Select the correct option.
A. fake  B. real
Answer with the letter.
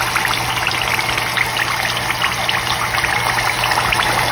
B